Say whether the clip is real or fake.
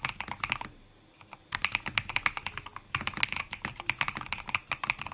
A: real